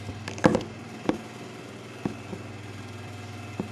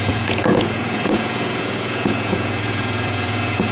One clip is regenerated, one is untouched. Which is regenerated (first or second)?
second